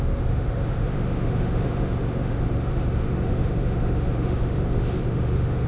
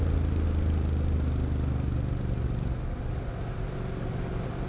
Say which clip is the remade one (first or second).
first